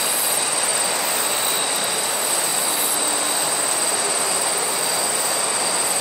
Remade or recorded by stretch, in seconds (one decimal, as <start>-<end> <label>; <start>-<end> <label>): 0.0-6.0 recorded